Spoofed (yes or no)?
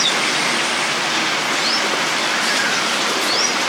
no